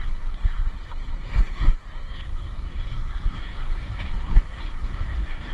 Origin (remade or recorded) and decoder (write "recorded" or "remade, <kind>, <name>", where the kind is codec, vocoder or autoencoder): remade, codec, SNAC